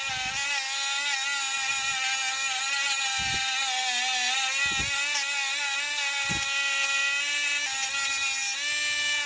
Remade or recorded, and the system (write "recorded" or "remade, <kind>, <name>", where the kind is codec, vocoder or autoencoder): recorded